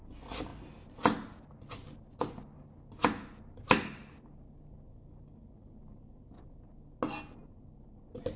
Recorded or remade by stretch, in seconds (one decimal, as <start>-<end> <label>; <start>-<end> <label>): 0.0-8.4 recorded